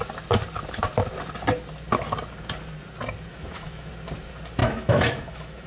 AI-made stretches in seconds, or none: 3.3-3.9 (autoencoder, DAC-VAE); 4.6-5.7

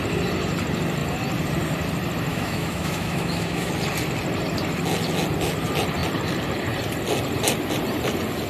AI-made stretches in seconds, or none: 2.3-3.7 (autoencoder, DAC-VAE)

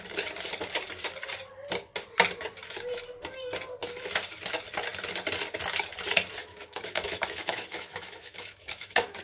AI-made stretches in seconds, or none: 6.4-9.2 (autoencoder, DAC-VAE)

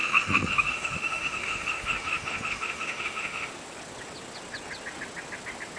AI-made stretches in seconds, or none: 0.0-3.5 (autoencoder, DAC-VAE)